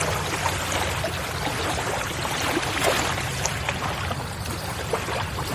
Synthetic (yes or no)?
no